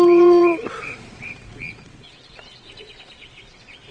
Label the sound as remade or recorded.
remade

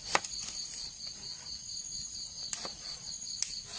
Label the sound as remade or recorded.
recorded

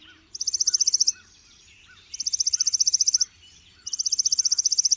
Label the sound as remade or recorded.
remade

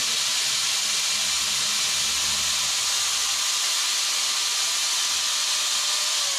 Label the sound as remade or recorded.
recorded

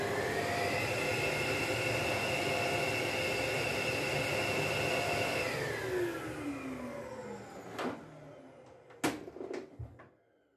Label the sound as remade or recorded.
recorded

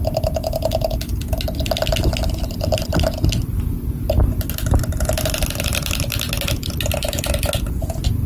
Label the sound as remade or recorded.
recorded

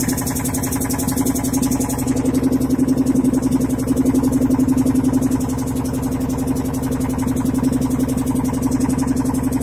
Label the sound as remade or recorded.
recorded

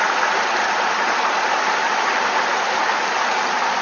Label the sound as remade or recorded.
recorded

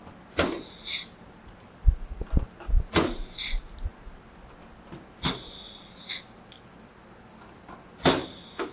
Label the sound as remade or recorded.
recorded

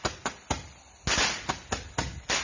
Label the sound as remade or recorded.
recorded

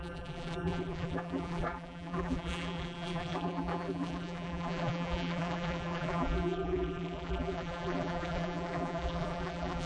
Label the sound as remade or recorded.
remade